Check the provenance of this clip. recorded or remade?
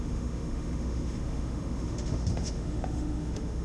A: remade